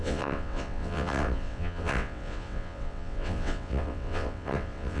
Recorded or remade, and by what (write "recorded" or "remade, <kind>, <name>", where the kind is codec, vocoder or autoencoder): remade, vocoder, WaveNeXt